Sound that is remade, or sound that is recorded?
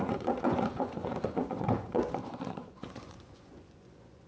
remade